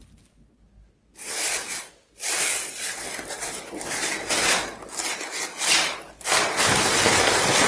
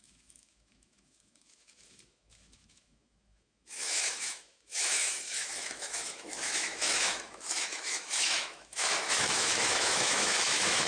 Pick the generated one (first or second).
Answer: second